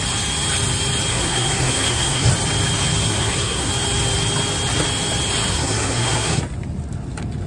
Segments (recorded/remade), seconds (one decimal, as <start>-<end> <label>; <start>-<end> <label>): 0.0-1.1 recorded; 1.1-2.3 remade; 2.3-3.0 recorded; 3.0-3.7 remade; 3.7-5.5 recorded; 5.5-6.4 remade; 6.4-7.5 recorded